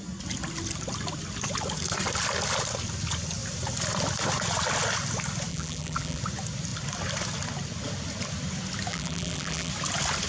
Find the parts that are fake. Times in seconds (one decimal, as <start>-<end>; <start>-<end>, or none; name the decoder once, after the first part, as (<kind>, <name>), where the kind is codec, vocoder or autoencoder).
5.5-6.2 (vocoder, BigVGAN v2); 8.9-9.7